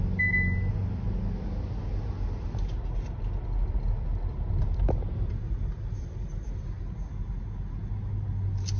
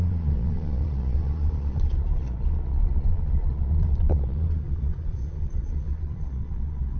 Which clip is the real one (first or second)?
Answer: first